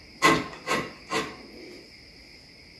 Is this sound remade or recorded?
recorded